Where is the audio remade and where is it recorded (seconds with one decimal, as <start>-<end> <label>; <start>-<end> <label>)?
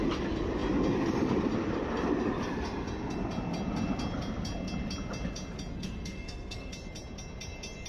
0.0-5.7 recorded; 5.7-6.7 remade; 6.7-7.9 recorded